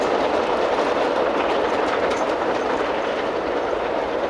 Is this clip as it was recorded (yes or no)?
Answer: no